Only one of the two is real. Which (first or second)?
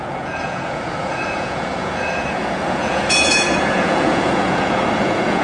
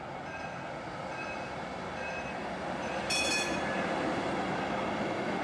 second